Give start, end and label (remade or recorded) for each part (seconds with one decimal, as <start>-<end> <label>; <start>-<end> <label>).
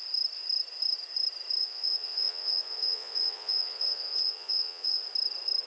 0.0-1.6 recorded; 1.6-5.0 remade; 5.0-5.7 recorded